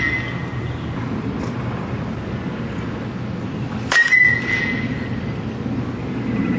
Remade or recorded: recorded